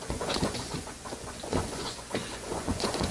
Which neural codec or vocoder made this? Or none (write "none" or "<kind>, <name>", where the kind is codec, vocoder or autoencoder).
vocoder, Vocos